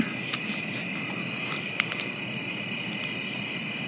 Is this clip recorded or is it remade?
recorded